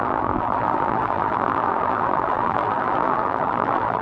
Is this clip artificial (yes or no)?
yes